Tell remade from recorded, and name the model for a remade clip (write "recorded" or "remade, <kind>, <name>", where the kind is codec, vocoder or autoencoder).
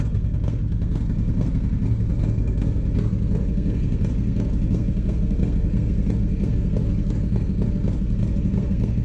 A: remade, codec, SNAC